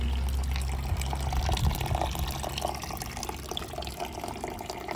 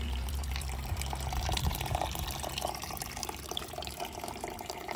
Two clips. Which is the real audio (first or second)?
first